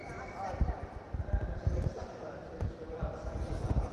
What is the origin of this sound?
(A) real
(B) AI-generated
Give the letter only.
B